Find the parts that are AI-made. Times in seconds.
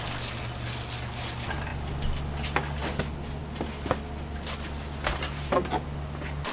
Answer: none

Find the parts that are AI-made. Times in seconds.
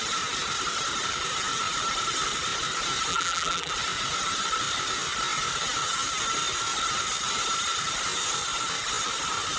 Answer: 3.1-3.7 (vocoder, BigVGAN v2)